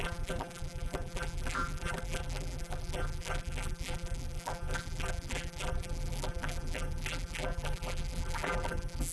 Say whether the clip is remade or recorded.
remade